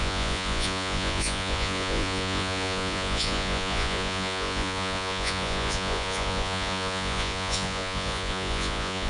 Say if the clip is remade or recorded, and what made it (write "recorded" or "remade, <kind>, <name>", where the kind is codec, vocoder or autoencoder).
remade, vocoder, Vocos